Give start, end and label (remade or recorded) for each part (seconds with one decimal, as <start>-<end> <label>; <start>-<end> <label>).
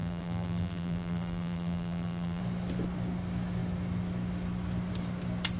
0.0-2.4 remade; 2.4-5.6 recorded